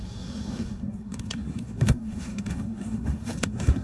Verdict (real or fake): fake